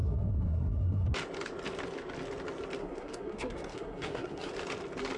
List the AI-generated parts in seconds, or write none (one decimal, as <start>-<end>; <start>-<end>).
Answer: 0.0-1.1; 2.8-4.5